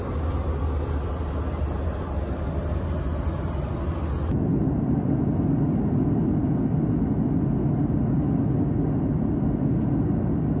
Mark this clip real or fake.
real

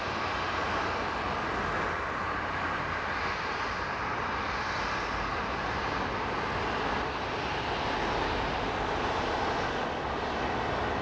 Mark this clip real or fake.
real